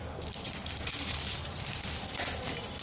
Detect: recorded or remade remade